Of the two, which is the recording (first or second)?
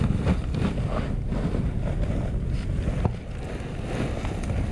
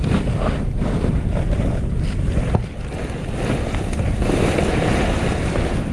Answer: first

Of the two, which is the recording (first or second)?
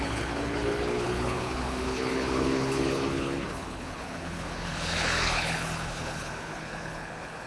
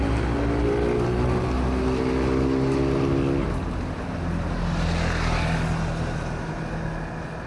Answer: second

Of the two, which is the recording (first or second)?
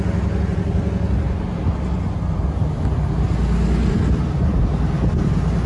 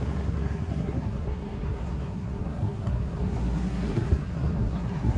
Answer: first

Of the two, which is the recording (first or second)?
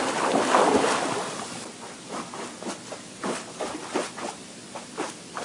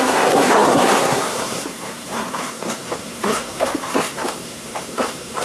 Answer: first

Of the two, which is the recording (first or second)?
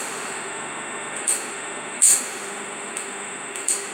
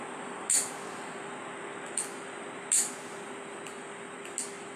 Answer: second